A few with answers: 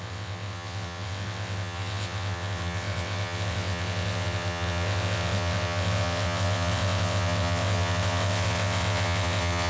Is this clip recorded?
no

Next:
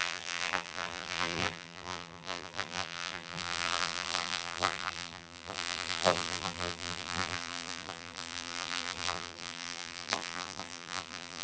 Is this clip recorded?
no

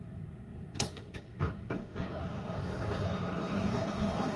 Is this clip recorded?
no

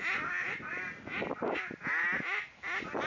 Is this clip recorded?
yes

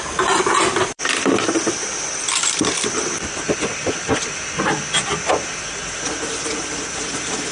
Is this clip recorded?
no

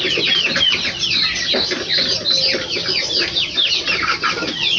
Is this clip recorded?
yes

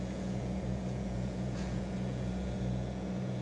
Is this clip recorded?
no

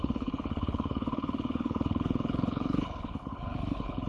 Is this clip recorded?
no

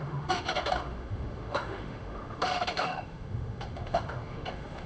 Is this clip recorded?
no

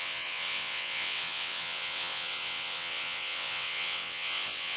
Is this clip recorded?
no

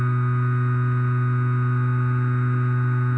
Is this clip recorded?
yes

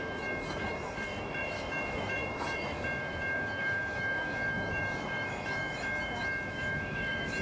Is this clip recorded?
no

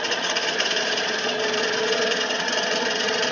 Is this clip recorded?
no